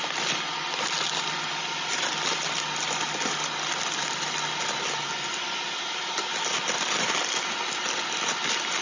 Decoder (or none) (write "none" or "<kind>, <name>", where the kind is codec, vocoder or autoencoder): none